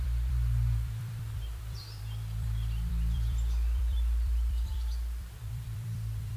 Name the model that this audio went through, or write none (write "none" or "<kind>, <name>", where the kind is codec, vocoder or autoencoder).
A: vocoder, BigVGAN v2